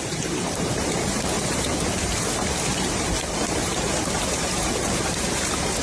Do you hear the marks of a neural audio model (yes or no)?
yes